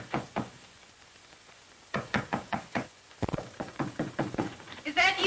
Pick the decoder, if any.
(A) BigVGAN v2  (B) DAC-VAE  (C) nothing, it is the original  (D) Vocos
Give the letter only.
D